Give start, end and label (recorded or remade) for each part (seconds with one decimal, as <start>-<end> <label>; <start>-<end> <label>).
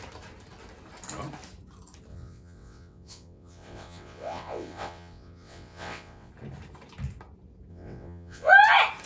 0.0-2.1 recorded; 2.1-6.3 remade; 6.3-7.7 recorded; 7.7-8.5 remade; 8.5-9.1 recorded